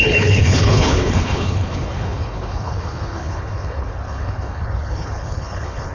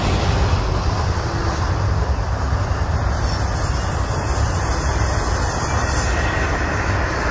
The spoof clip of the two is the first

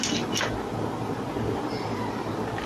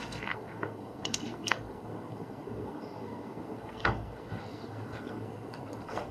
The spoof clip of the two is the second